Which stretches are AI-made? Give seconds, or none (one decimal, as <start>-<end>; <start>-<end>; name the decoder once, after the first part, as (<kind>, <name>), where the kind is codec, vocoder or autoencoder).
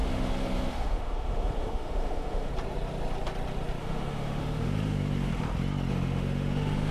0.0-2.5 (autoencoder, DAC-VAE); 3.8-5.3; 5.9-6.9